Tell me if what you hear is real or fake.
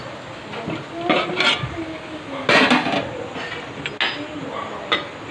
real